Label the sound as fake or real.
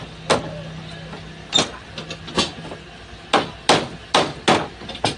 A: real